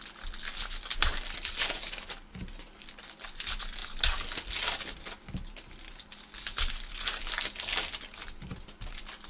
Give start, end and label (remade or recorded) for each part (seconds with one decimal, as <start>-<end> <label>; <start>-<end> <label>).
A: 0.0-9.3 recorded